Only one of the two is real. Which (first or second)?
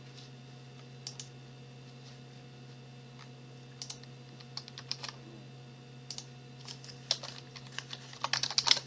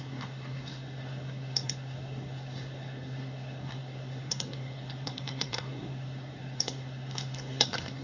first